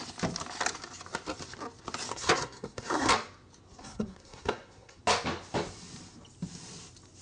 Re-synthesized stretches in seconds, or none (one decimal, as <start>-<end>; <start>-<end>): 2.1-3.1; 3.8-5.0